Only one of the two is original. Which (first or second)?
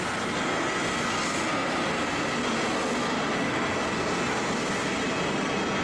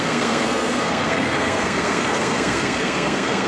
first